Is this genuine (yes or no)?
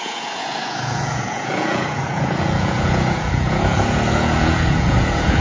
no